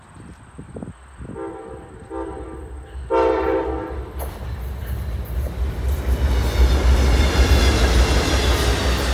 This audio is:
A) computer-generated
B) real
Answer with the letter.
B